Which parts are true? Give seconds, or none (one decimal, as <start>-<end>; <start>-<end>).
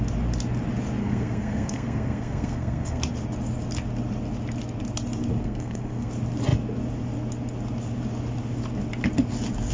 0.0-1.0; 3.0-5.4; 6.1-9.7